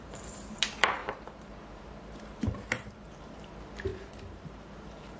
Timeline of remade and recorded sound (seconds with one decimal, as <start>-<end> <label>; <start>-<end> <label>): 0.0-5.2 remade